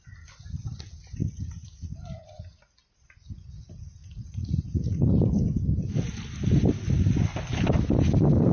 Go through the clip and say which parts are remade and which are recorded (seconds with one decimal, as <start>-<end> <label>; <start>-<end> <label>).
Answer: 0.0-1.2 recorded; 1.2-2.8 remade; 2.8-4.0 recorded; 4.0-5.0 remade; 5.0-8.5 recorded